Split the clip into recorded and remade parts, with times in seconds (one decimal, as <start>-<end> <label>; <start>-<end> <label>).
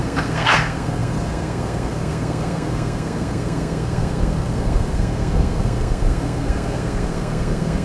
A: 0.0-7.8 remade